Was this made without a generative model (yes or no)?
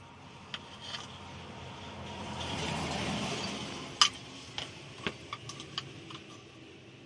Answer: yes